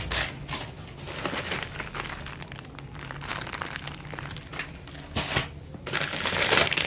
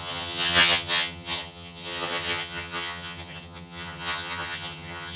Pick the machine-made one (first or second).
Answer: second